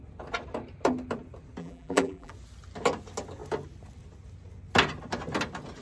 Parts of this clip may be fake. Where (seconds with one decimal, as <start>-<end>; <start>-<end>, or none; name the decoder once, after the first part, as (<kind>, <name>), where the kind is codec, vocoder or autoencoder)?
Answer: 1.6-2.3 (vocoder, BigVGAN v2)